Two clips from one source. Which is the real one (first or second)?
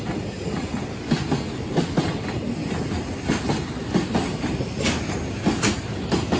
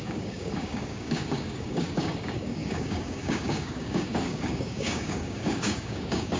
first